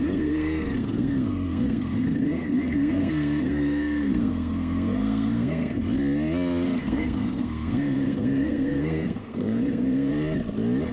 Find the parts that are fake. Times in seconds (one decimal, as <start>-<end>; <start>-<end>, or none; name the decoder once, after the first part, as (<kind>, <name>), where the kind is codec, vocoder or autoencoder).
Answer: 0.0-5.8 (codec, SNAC); 6.8-10.1